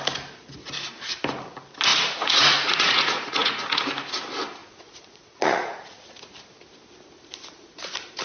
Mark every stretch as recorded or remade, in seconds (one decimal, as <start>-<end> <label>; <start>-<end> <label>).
0.0-1.9 recorded; 1.9-3.8 remade; 3.8-4.6 recorded; 4.6-6.1 remade; 6.1-8.2 recorded